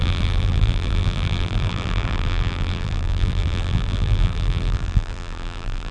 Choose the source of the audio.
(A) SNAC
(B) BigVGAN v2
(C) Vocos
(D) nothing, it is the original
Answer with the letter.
B